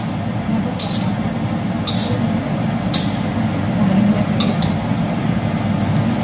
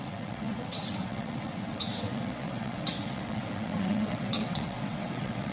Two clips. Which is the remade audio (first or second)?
second